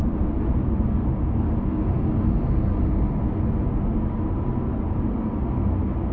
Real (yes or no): yes